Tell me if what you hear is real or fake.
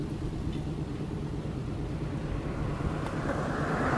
fake